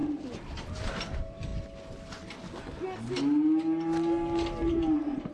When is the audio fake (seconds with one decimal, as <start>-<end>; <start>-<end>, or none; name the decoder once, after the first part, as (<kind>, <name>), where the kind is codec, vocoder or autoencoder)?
0.0-1.5 (vocoder, BigVGAN v2); 4.7-5.3